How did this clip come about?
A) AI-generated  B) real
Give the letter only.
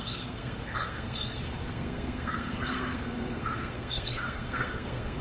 A